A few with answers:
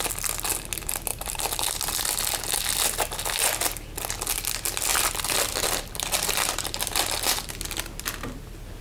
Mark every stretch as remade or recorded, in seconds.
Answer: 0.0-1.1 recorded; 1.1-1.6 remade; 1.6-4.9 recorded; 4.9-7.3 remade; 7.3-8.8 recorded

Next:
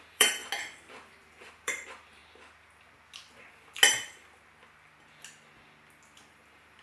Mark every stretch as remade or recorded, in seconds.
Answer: 0.0-0.4 remade; 0.4-1.1 recorded; 1.1-2.2 remade; 2.2-6.3 recorded; 6.3-6.8 remade

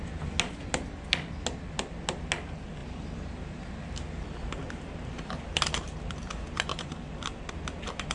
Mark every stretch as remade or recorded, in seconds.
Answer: 0.0-2.8 recorded; 2.8-3.7 remade; 3.7-6.7 recorded; 6.7-7.5 remade; 7.5-8.1 recorded